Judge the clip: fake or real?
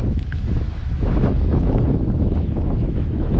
fake